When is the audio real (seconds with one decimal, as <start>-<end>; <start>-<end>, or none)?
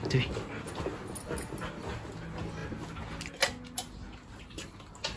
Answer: 0.0-5.2